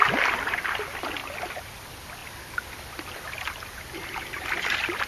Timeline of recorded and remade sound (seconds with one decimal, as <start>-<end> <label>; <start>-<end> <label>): 0.0-1.2 remade; 1.2-1.7 recorded; 1.7-5.1 remade